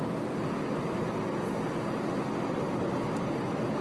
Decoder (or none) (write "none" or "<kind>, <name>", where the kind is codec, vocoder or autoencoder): none